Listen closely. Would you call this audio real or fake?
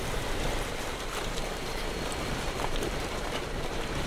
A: fake